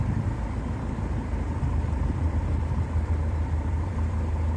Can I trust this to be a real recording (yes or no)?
no